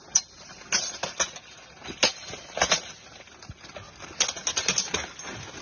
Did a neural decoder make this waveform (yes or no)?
no